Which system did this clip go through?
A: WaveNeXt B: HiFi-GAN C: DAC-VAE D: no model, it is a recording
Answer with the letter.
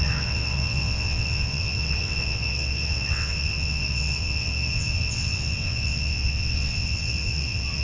A